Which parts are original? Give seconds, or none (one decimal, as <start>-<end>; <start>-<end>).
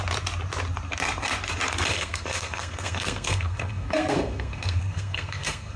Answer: 0.0-1.9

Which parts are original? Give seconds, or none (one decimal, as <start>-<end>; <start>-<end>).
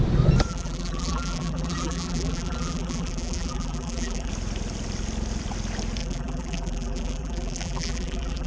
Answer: 0.0-0.5; 4.3-6.0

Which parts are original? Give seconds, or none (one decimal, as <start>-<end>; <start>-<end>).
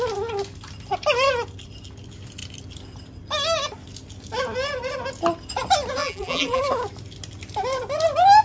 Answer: 0.0-6.0; 6.6-8.4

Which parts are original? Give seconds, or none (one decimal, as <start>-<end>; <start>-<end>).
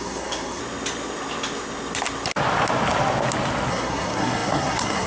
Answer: 0.6-3.7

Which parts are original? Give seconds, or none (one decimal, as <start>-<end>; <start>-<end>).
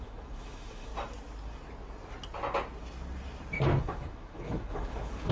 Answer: 0.9-3.8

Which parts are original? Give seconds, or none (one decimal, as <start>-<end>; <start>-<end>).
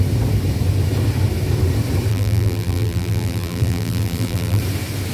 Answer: 0.0-2.1; 4.6-5.1